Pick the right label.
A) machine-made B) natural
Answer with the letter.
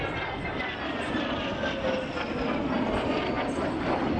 B